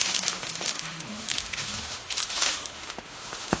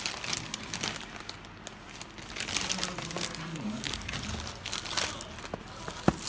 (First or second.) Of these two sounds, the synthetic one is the first